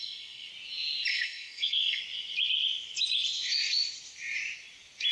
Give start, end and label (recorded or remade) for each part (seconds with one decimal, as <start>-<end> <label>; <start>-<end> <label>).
0.0-0.5 remade; 0.5-1.1 recorded; 1.1-2.0 remade; 2.0-5.1 recorded